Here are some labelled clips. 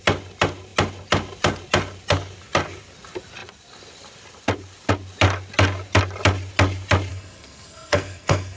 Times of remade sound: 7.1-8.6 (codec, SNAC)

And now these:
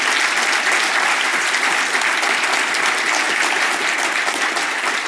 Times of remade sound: none

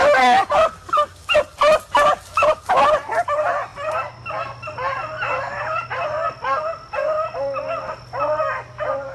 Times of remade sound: none

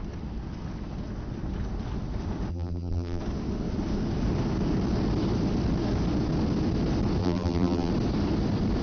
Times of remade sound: 2.5-3.2 (vocoder, BigVGAN v2); 7.2-7.9

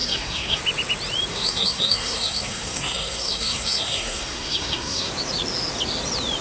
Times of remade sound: 0.0-0.6 (codec, SNAC); 1.3-5.1

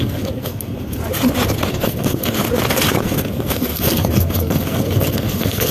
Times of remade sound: 0.0-1.0 (codec, SNAC); 1.7-2.4; 3.0-5.7

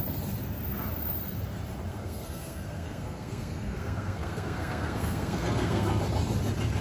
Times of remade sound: 1.9-6.0 (codec, SNAC)